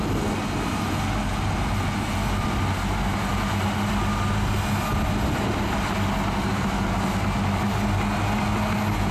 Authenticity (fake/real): real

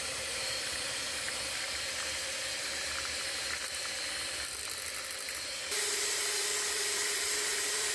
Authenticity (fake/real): fake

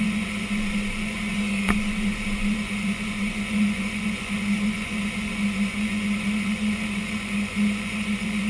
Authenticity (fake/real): fake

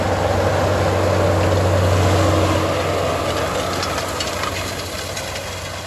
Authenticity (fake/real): real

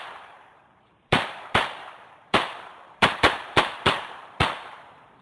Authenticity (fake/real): fake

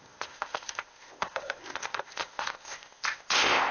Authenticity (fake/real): fake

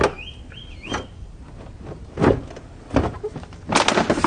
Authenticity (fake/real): real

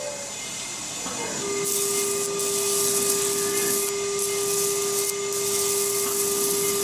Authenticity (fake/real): real